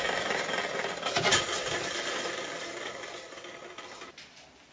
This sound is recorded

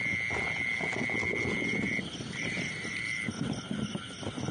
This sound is recorded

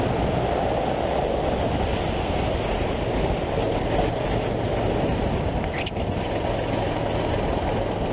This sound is recorded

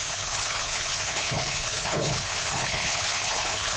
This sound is remade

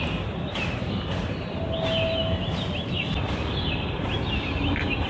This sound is recorded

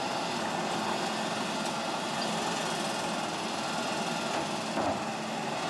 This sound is recorded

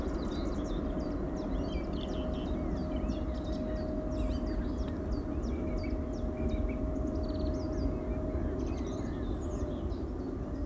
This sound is recorded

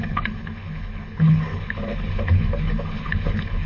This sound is remade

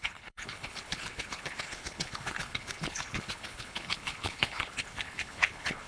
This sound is remade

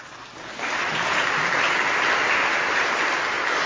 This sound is recorded